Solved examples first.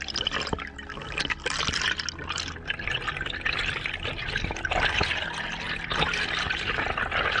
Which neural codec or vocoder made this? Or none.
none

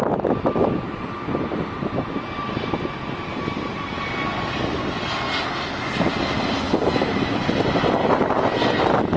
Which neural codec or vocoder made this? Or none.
none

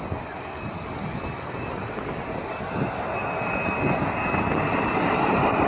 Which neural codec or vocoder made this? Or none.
none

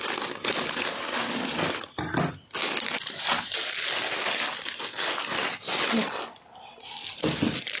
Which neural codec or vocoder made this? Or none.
none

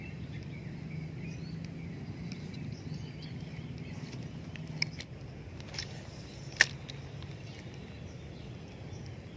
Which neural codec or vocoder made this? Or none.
none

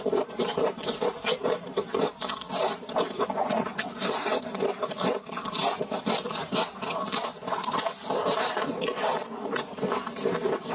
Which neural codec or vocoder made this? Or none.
vocoder, BigVGAN v2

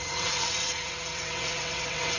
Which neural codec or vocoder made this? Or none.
vocoder, WaveNeXt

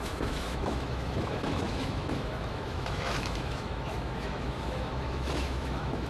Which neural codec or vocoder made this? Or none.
autoencoder, DAC-VAE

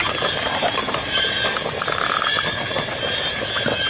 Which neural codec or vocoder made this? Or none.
none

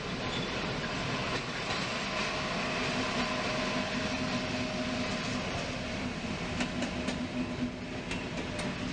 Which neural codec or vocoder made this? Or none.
none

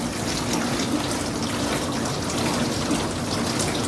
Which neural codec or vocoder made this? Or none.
none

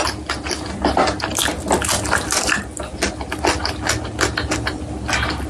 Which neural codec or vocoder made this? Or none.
none